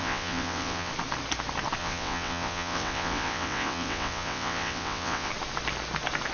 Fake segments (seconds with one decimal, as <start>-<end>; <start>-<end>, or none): 0.0-0.9; 1.8-5.3